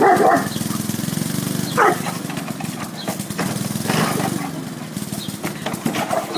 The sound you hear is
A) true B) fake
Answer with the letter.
A